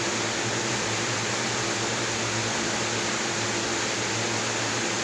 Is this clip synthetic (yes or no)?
no